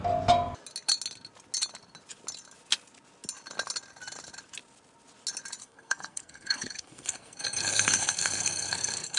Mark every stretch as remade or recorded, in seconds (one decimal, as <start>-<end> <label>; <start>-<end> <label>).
0.0-5.6 recorded; 5.6-9.2 remade

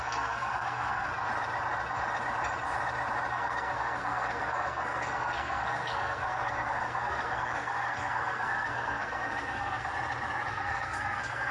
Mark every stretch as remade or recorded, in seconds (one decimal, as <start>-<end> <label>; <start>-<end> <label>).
0.0-1.1 remade; 1.1-3.3 recorded; 3.3-9.9 remade; 9.9-10.5 recorded; 10.5-11.5 remade

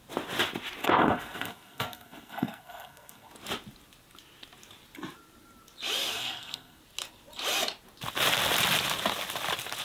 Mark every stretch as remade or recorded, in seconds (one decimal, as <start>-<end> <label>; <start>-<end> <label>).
0.0-0.8 recorded; 0.8-3.3 remade; 3.3-6.1 recorded; 6.1-6.8 remade; 6.8-9.8 recorded

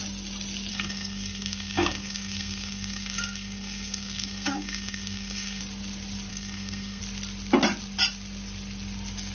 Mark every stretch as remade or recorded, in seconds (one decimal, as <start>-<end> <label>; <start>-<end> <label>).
0.0-0.7 recorded; 0.7-5.6 remade; 5.6-6.3 recorded; 6.3-7.0 remade; 7.0-9.3 recorded

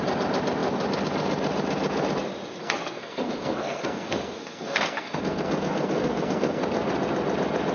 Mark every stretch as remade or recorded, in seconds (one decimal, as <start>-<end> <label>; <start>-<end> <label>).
0.0-2.6 recorded; 2.6-6.6 remade; 6.6-7.7 recorded

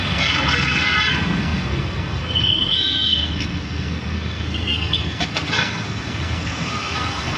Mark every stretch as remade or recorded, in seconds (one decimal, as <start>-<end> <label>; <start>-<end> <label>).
0.0-7.4 remade

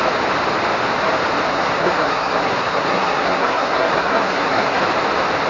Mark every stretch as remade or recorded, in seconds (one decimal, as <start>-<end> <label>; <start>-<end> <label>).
0.0-1.5 recorded; 1.5-4.8 remade; 4.8-5.5 recorded

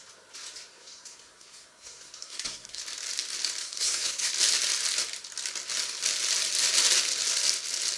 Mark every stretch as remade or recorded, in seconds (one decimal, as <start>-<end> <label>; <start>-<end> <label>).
0.0-0.7 recorded; 0.7-2.8 remade; 2.8-3.6 recorded; 3.6-4.3 remade; 4.3-8.0 recorded